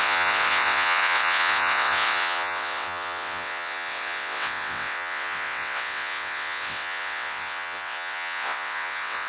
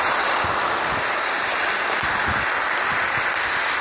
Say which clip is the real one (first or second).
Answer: second